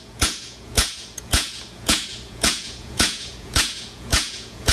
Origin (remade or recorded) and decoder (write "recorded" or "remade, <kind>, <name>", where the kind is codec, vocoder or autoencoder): remade, vocoder, Vocos